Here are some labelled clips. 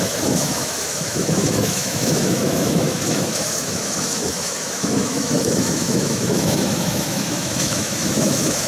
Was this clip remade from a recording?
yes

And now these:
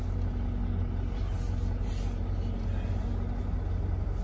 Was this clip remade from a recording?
no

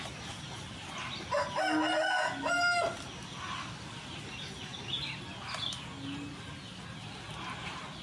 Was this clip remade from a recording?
no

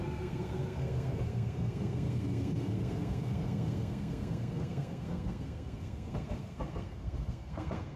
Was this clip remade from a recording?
yes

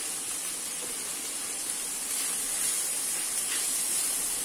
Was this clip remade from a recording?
no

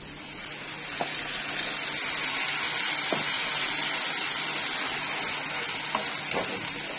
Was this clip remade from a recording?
no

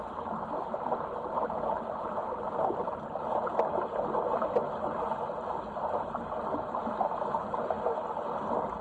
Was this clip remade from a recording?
no